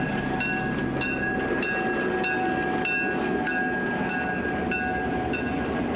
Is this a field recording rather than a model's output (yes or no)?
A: yes